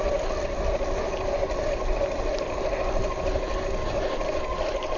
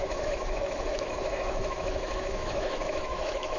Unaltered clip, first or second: first